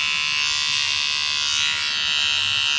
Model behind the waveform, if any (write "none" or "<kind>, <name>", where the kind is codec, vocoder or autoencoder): none